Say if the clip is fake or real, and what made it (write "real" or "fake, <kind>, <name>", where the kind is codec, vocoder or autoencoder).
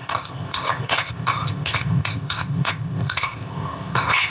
fake, codec, ZipCodec